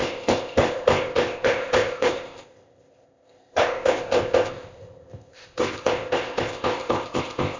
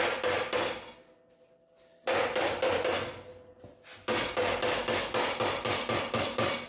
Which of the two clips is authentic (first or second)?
second